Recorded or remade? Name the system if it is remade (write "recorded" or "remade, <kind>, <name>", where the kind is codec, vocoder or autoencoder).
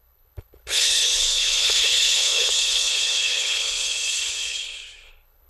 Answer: remade, codec, HILCodec